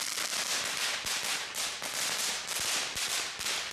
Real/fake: fake